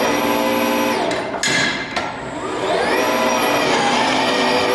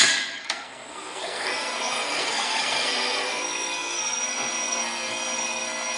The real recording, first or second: first